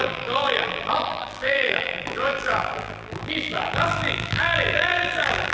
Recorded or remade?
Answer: remade